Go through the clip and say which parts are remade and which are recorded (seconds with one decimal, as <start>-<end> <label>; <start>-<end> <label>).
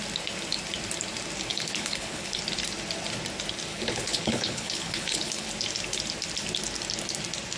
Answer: 0.0-1.5 recorded; 1.5-2.4 remade; 2.4-3.7 recorded; 3.7-5.5 remade; 5.5-7.6 recorded